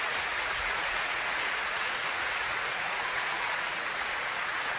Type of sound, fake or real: fake